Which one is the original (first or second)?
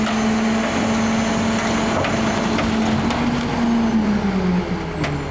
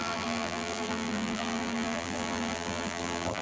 first